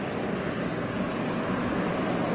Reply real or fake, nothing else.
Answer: real